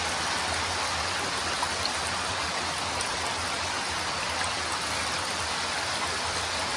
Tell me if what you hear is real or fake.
real